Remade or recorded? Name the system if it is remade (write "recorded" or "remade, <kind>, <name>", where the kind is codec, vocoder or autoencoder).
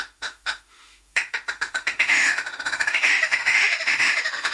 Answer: remade, autoencoder, DAC-VAE